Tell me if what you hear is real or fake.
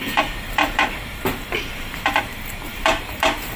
fake